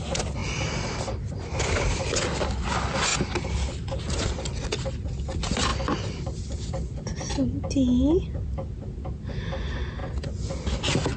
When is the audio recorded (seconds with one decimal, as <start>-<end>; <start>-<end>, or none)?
0.0-5.7; 7.3-11.2